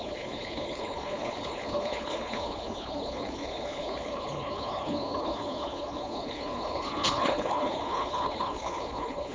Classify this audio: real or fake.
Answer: fake